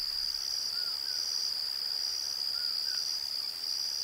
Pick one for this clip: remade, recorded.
recorded